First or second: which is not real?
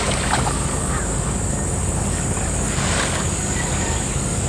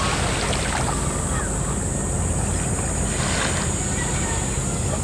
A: first